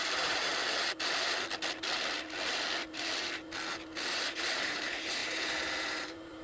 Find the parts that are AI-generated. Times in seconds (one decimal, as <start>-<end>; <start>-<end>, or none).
0.0-0.5; 4.2-5.2; 6.0-6.4